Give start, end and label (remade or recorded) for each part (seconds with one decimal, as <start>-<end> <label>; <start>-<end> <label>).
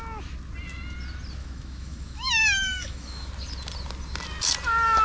0.0-1.4 recorded; 1.4-3.3 remade; 3.3-5.0 recorded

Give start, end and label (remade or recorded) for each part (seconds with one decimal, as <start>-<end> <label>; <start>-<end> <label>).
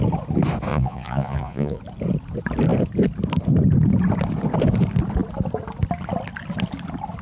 0.0-0.7 recorded; 0.7-1.8 remade; 1.8-7.2 recorded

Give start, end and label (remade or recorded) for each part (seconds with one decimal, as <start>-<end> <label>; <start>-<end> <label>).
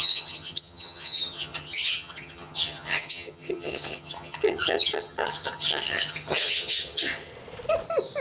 0.0-7.3 remade; 7.3-8.2 recorded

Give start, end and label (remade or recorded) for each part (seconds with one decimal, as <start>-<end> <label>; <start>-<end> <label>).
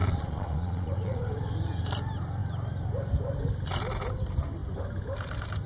0.0-1.2 remade; 1.2-5.7 recorded